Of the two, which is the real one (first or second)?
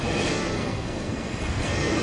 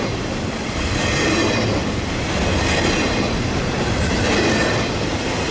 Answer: second